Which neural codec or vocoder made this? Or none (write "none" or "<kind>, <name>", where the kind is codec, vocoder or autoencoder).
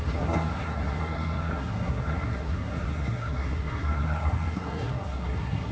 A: codec, SNAC